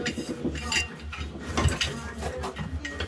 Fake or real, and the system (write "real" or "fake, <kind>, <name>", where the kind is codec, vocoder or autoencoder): real